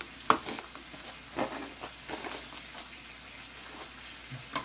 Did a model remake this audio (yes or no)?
no